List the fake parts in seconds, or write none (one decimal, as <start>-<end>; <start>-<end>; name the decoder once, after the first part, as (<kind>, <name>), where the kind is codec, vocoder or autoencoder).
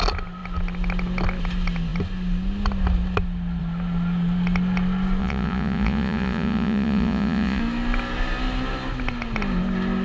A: 5.2-7.6 (vocoder, Vocos)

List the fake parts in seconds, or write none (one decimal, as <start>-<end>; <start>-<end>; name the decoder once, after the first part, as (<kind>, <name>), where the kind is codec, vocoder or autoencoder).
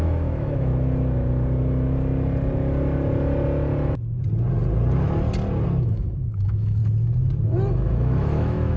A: 0.0-0.7 (autoencoder, DAC-VAE); 5.8-6.8; 7.5-8.8